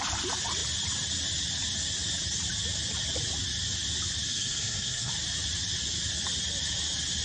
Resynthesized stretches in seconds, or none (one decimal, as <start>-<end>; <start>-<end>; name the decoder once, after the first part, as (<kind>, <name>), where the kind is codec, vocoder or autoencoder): 4.3-5.1 (codec, SNAC)